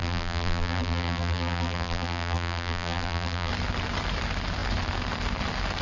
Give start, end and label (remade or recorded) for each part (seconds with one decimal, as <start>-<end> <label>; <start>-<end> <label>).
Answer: 0.0-3.5 remade; 3.5-5.8 recorded